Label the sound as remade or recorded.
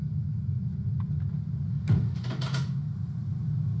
recorded